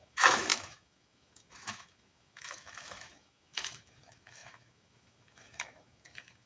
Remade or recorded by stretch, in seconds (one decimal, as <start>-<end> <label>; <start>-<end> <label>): 0.0-6.5 remade